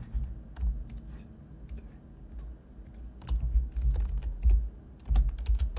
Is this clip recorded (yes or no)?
yes